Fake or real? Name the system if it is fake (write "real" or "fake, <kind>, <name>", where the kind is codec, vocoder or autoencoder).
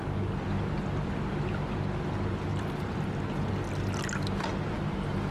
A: real